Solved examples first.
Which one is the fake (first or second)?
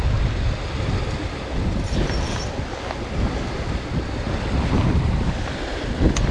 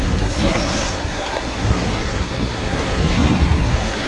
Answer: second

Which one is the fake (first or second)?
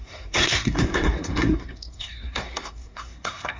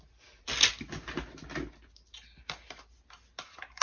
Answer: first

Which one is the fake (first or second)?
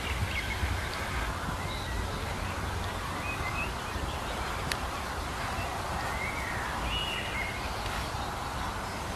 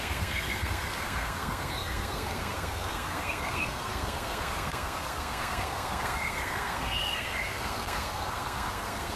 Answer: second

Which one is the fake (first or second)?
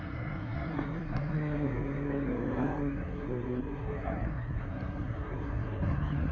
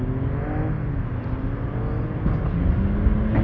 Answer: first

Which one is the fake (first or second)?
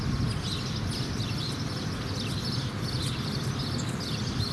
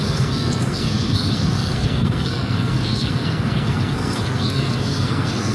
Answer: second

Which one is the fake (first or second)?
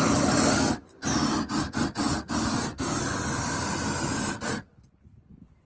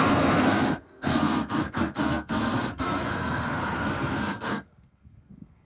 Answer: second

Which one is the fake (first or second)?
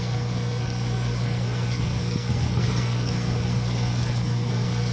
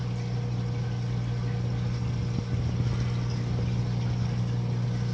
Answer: first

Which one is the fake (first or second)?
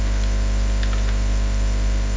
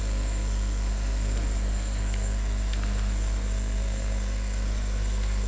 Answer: second